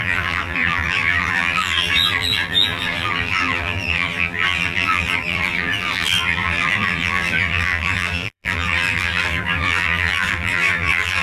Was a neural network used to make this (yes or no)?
yes